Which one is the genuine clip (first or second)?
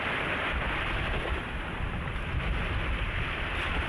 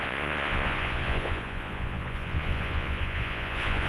first